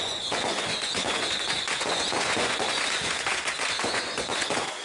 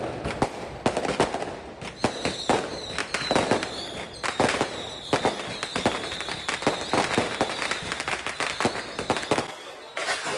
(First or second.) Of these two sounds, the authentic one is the second